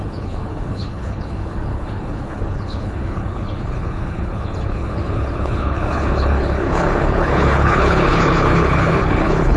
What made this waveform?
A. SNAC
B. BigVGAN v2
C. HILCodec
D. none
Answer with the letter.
C